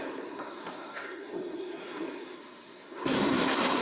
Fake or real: fake